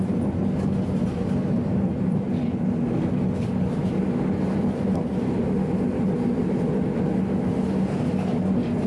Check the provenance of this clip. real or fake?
real